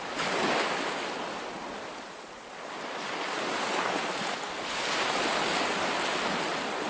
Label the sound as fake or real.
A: real